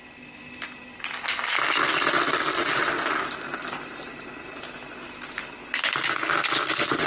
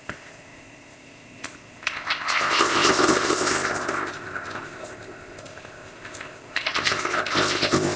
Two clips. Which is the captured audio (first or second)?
first